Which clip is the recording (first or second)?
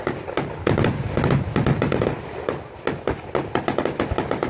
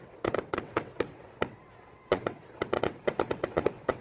first